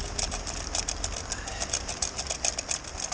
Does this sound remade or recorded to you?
recorded